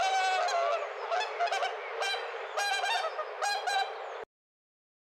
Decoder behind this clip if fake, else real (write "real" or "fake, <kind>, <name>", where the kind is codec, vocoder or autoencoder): real